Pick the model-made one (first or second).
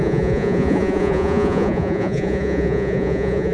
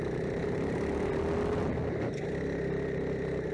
first